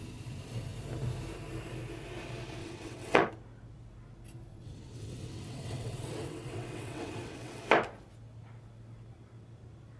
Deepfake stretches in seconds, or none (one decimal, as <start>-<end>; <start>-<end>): 2.6-3.3; 4.5-7.6